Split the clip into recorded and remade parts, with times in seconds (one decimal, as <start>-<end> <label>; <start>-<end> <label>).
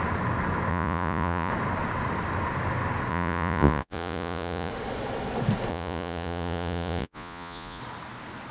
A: 0.0-0.7 recorded; 0.7-1.5 remade; 1.5-3.1 recorded; 3.1-4.7 remade; 4.7-5.7 recorded; 5.7-7.8 remade; 7.8-8.5 recorded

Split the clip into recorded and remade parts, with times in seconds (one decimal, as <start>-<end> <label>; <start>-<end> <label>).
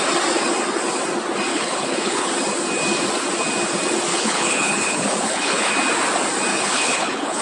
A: 0.0-1.5 recorded; 1.5-2.3 remade; 2.3-4.1 recorded; 4.1-5.7 remade; 5.7-6.5 recorded; 6.5-7.4 remade